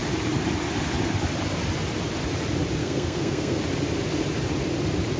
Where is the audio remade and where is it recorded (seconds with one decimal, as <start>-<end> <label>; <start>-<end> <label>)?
0.0-2.8 recorded; 2.8-3.6 remade; 3.6-5.2 recorded